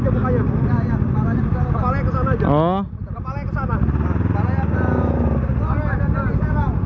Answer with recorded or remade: recorded